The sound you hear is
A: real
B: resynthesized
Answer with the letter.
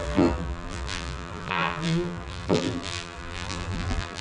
B